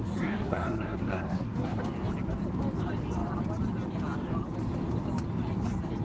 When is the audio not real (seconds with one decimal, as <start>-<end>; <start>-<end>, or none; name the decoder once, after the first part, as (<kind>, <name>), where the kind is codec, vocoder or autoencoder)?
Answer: 0.0-1.8 (codec, SNAC)